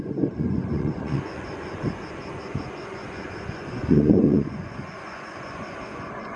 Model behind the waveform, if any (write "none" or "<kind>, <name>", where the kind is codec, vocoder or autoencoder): vocoder, Vocos